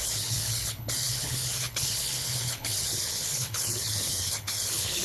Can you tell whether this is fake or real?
fake